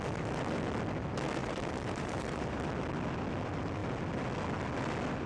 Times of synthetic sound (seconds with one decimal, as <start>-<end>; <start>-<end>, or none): 1.4-2.6